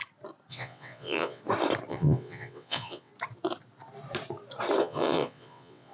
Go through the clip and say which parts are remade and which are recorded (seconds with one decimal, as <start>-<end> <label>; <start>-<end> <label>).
0.0-0.5 recorded; 0.5-1.4 remade; 1.4-1.9 recorded; 1.9-3.1 remade; 3.1-4.8 recorded; 4.8-5.9 remade